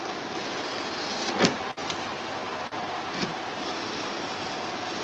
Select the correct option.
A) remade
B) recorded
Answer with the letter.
B